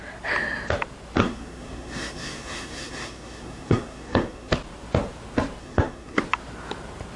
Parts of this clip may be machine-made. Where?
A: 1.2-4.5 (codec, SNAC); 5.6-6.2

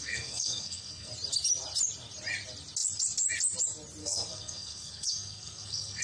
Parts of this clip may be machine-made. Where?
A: 0.0-1.1 (codec, SNAC); 4.0-6.0

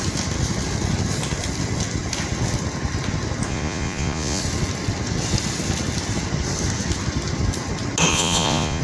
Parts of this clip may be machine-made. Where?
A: 3.5-4.4 (vocoder, Vocos); 8.1-8.8